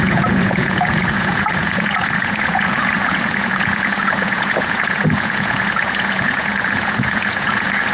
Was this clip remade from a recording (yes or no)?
yes